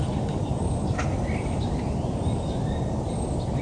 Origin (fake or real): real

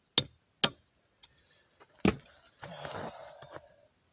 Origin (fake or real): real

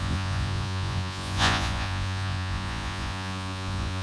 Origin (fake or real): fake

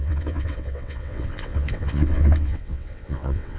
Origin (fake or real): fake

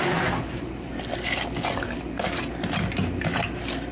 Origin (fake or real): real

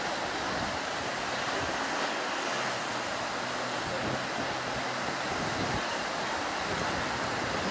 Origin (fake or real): real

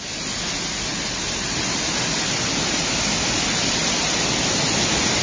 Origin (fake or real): real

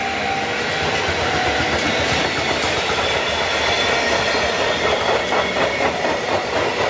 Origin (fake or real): real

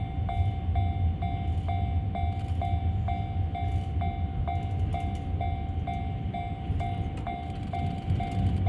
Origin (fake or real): real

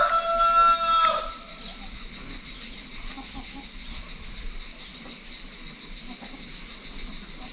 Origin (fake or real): real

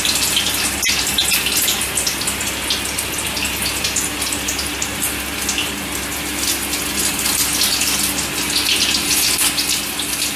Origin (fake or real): real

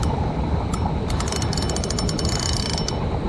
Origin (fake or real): real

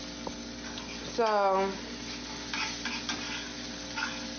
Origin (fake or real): real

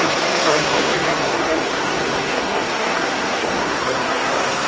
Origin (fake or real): fake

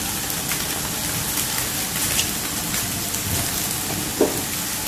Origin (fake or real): real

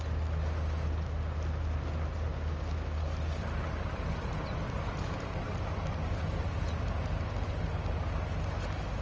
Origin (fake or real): real